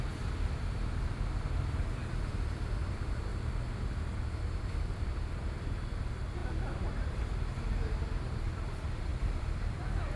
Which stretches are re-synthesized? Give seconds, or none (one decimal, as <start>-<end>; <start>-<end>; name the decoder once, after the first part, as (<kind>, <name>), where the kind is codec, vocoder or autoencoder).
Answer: 0.0-3.3 (vocoder, BigVGAN v2); 6.0-10.2